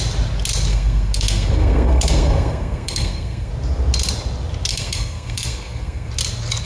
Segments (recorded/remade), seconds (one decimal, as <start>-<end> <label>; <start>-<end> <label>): 0.0-0.7 recorded; 0.7-3.5 remade; 3.5-4.7 recorded; 4.7-6.1 remade; 6.1-6.6 recorded